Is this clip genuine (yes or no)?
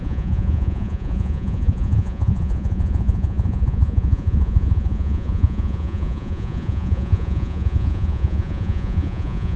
no